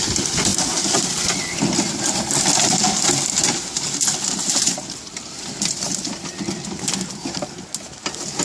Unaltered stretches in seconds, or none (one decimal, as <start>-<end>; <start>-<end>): 0.0-8.4